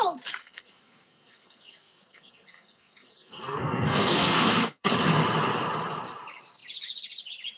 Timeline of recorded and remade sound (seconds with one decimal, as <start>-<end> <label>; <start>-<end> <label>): 0.0-0.4 recorded; 0.4-4.9 remade; 4.9-7.6 recorded